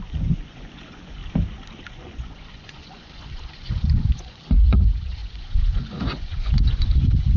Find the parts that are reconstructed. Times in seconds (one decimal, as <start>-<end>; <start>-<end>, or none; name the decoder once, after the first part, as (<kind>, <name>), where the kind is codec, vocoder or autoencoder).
0.0-1.2 (vocoder, Vocos); 1.9-7.4